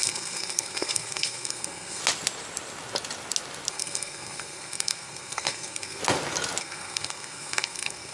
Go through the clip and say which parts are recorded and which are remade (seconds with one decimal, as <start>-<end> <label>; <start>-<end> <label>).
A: 0.0-2.0 remade; 2.0-3.7 recorded; 3.7-6.0 remade; 6.0-6.6 recorded; 6.6-8.1 remade